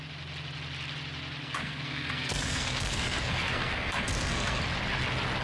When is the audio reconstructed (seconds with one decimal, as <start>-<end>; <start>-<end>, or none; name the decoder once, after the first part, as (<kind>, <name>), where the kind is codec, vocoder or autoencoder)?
1.4-4.6 (codec, SNAC)